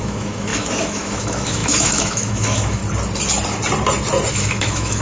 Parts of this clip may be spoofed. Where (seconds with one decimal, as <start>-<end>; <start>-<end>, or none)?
0.0-2.8; 4.3-5.0